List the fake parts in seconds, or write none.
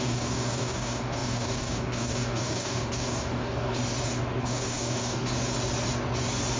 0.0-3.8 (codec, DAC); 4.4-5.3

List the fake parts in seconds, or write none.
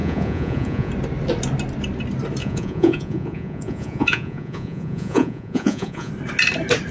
0.0-0.9 (vocoder, Vocos); 2.4-6.1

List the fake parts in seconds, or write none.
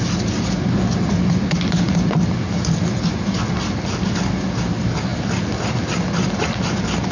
5.1-6.4 (vocoder, BigVGAN v2)